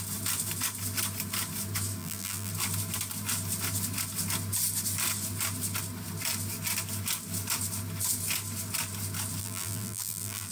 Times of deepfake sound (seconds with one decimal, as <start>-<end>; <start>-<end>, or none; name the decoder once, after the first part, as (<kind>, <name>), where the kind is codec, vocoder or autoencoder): 2.0-2.5 (vocoder, BigVGAN v2); 9.4-10.5